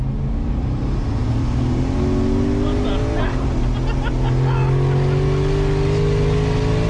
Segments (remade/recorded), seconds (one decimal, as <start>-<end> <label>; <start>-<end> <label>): 0.0-6.9 recorded